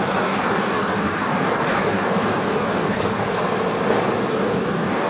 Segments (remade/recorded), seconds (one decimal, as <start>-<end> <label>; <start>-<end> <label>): 0.0-3.4 remade; 3.4-4.3 recorded; 4.3-5.1 remade